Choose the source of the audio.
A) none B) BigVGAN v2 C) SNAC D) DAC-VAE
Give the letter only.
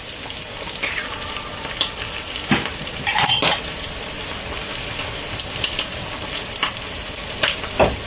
A